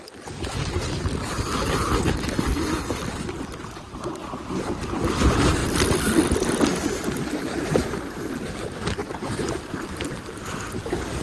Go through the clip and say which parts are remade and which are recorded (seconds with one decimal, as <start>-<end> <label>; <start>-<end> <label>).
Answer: 0.0-11.2 recorded